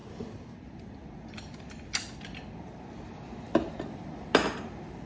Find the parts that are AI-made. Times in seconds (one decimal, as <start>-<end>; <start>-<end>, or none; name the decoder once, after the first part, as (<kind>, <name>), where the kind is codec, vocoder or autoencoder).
none